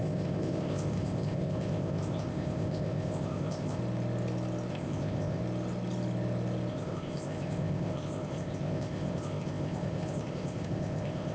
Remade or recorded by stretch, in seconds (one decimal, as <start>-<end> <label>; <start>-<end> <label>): 0.0-3.8 remade; 3.8-4.7 recorded; 4.7-5.4 remade; 5.4-6.7 recorded; 6.7-11.3 remade